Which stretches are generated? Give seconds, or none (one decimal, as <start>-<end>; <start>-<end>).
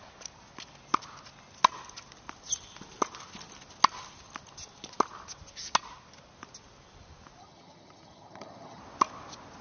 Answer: 7.4-8.8